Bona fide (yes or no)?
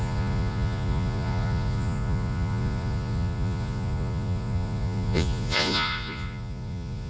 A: no